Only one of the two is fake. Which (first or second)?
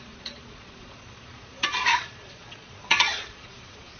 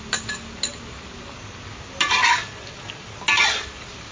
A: first